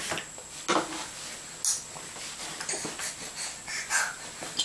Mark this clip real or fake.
real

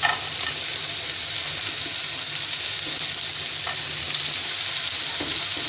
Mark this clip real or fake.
real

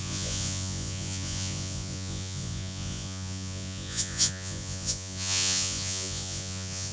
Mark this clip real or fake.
fake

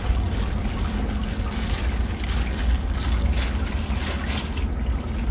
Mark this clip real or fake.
real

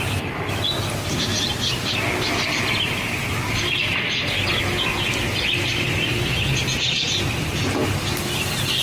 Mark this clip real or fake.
real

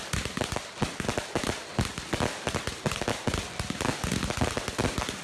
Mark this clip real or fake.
real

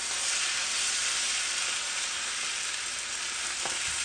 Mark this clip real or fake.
real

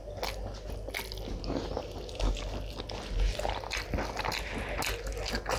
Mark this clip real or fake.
real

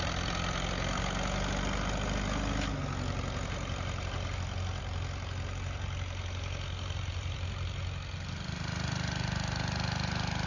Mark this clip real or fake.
real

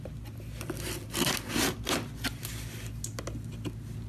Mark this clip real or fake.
real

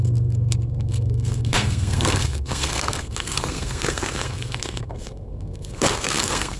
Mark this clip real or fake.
fake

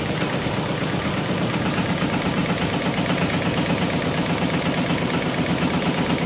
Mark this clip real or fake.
real